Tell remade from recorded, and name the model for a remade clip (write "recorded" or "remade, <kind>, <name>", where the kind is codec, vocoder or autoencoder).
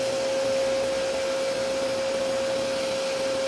recorded